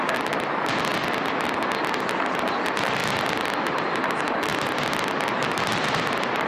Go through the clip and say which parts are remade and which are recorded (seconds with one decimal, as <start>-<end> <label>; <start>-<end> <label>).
0.0-6.5 recorded